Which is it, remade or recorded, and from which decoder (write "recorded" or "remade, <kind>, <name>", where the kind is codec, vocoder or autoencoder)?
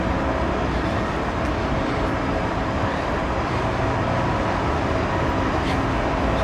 recorded